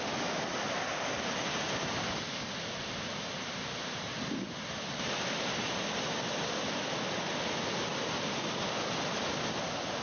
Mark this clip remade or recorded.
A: recorded